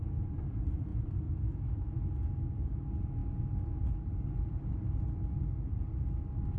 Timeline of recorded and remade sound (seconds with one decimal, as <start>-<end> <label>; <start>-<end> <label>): 0.0-6.6 recorded